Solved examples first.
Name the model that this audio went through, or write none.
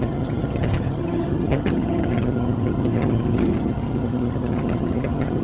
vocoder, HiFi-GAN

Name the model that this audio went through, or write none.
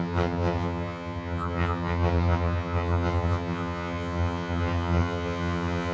vocoder, HiFi-GAN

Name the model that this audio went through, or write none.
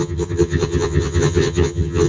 vocoder, HiFi-GAN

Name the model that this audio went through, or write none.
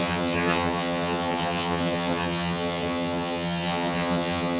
vocoder, HiFi-GAN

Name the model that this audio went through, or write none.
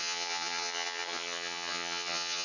vocoder, HiFi-GAN